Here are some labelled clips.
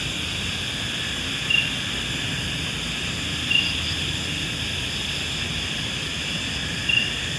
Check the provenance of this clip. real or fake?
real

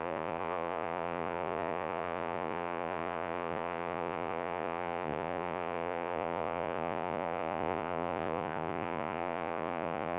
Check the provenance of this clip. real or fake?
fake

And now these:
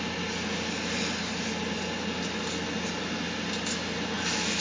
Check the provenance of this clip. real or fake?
real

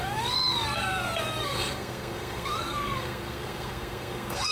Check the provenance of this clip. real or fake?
fake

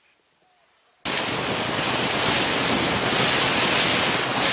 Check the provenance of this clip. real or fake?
real